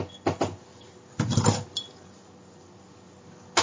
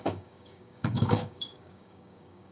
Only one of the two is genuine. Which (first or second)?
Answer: first